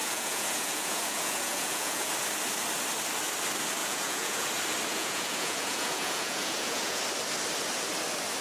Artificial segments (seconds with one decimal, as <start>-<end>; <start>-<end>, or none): 0.0-2.1; 3.8-4.5; 4.9-7.0